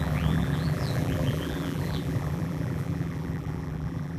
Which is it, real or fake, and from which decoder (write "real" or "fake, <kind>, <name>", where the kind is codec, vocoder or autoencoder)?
fake, vocoder, BigVGAN v2